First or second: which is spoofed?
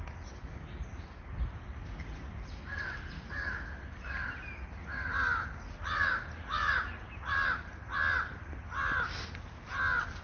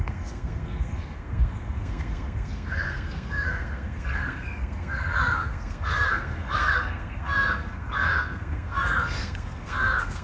second